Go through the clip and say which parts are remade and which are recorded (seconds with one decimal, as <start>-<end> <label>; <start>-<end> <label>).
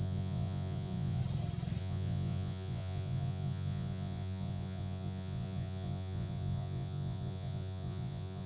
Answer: 0.0-1.2 remade; 1.2-1.8 recorded; 1.8-8.5 remade